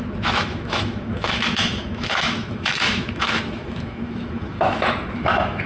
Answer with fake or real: fake